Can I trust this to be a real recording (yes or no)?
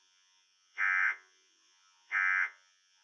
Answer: no